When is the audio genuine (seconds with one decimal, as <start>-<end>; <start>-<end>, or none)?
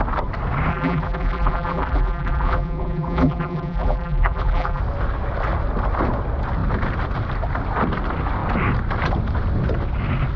0.0-0.7; 4.8-10.4